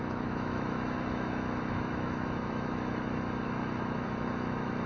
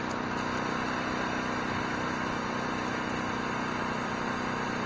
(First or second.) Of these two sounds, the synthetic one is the first